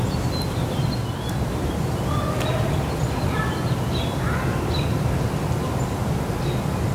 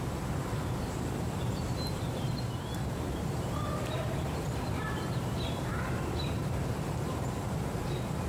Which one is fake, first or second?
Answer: second